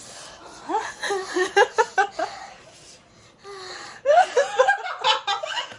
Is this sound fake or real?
real